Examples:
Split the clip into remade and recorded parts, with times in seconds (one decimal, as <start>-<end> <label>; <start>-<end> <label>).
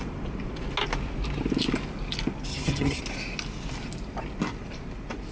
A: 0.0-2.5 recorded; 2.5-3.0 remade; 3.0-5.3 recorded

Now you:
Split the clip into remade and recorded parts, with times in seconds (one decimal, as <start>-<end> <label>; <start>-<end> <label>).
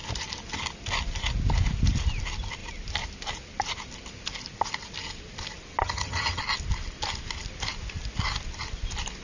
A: 0.0-5.8 recorded; 5.8-6.4 remade; 6.4-9.2 recorded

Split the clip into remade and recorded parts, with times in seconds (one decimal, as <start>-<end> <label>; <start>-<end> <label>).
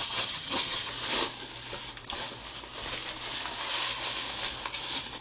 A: 0.0-0.9 remade; 0.9-5.2 recorded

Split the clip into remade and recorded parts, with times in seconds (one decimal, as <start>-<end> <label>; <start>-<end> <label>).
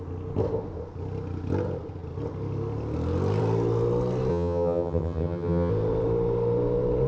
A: 0.0-4.3 recorded; 4.3-5.7 remade; 5.7-7.1 recorded